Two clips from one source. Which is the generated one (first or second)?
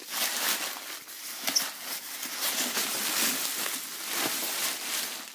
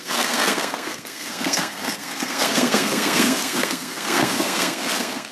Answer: second